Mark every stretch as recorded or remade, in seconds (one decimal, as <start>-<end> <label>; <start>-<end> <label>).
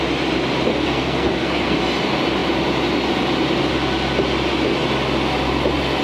0.0-0.7 recorded; 0.7-1.8 remade; 1.8-6.0 recorded